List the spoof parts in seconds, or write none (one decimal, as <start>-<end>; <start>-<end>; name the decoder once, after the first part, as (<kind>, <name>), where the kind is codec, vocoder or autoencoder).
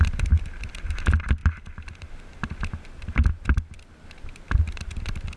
none